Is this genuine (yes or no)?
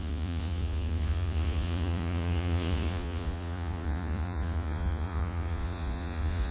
no